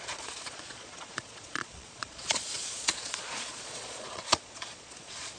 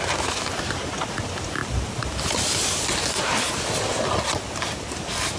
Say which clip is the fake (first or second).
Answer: first